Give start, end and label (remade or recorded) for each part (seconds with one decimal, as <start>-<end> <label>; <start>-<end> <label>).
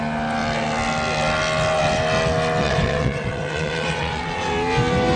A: 0.0-2.6 recorded; 2.6-4.5 remade; 4.5-5.2 recorded